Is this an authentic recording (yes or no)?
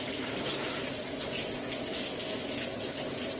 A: yes